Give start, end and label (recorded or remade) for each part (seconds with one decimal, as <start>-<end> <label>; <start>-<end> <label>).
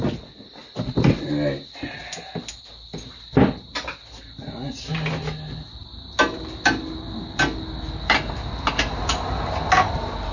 0.0-10.3 recorded